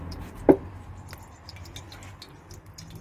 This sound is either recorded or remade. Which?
recorded